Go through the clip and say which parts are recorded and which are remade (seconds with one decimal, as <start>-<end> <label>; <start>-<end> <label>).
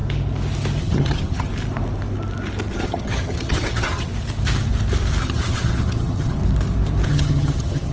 0.0-0.8 recorded; 0.8-1.5 remade; 1.5-2.7 recorded; 2.7-4.1 remade; 4.1-5.2 recorded; 5.2-6.4 remade; 6.4-7.1 recorded; 7.1-7.9 remade